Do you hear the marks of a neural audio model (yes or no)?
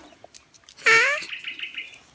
no